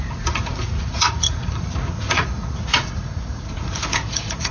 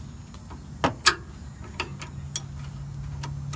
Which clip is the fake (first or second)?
first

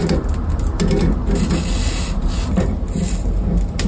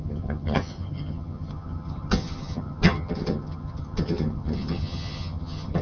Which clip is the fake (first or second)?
second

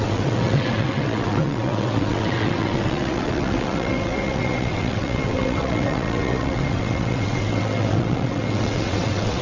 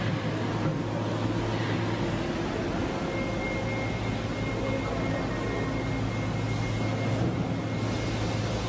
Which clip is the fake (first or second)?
first